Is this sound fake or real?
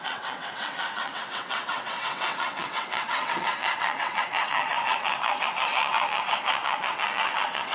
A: fake